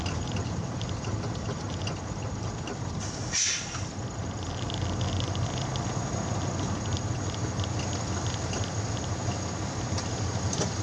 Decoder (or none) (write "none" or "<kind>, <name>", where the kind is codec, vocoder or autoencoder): none